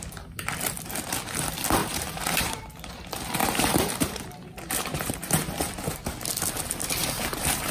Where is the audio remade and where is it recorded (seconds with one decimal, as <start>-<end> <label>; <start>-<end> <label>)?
0.0-1.8 recorded; 1.8-2.9 remade; 2.9-3.4 recorded; 3.4-5.1 remade; 5.1-7.0 recorded; 7.0-7.7 remade